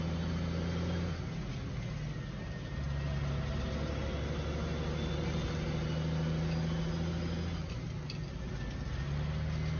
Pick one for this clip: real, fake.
real